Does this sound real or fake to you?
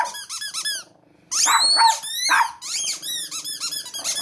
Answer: real